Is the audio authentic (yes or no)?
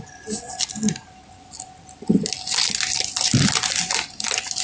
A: yes